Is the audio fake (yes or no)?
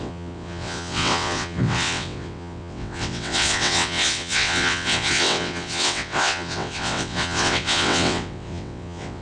yes